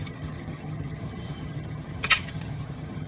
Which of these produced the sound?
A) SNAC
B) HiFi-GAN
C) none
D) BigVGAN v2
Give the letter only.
B